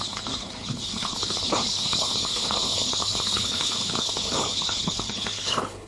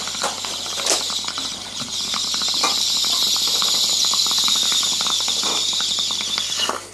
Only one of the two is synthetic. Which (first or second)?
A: first